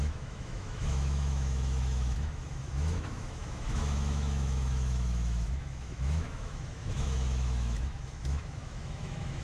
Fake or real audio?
fake